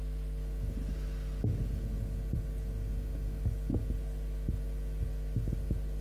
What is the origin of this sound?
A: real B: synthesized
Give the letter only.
A